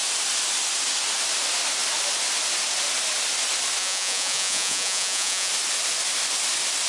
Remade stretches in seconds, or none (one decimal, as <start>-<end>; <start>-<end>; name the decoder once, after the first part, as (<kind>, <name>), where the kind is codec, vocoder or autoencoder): 3.8-5.5 (vocoder, Vocos)